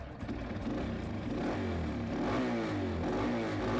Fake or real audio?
real